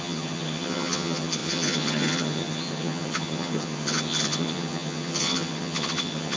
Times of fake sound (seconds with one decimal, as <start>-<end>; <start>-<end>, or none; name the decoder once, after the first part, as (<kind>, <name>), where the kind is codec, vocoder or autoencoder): 0.0-6.4 (vocoder, HiFi-GAN)